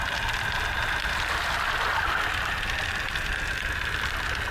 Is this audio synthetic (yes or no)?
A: no